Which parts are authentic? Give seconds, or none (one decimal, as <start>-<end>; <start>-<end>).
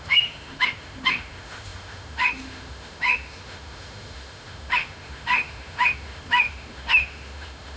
none